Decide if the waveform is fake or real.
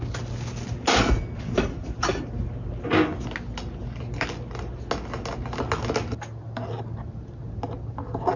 real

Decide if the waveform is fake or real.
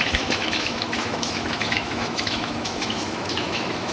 fake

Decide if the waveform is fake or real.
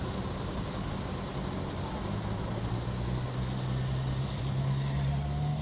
real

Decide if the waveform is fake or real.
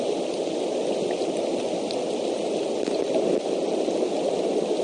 real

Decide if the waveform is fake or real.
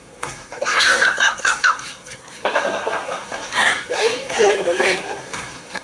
fake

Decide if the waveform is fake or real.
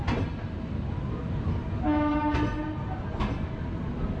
real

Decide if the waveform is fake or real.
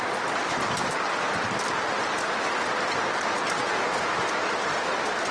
real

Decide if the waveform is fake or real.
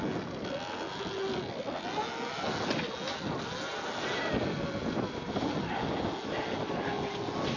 real